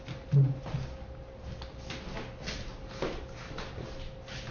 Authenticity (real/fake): real